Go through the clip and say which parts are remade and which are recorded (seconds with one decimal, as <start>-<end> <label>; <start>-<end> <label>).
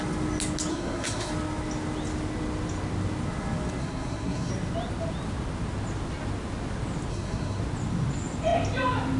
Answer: 0.0-0.7 recorded; 0.7-1.3 remade; 1.3-3.8 recorded; 3.8-4.5 remade; 4.5-7.1 recorded; 7.1-7.6 remade; 7.6-9.2 recorded